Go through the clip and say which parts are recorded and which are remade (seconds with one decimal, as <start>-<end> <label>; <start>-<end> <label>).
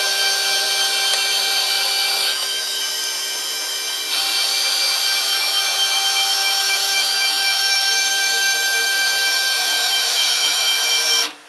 0.0-2.2 recorded; 2.2-2.8 remade; 2.8-6.4 recorded; 6.4-10.9 remade; 10.9-11.5 recorded